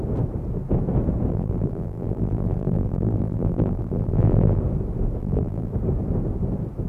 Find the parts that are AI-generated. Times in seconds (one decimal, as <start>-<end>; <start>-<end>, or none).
1.3-4.6; 5.2-5.7